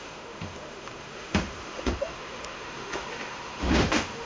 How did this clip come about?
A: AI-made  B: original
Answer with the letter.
A